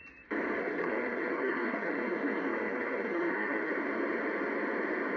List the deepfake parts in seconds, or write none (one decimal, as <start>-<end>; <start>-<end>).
0.6-3.7